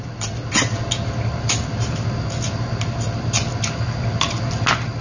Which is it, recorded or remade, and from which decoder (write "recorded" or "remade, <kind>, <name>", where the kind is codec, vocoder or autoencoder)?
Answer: recorded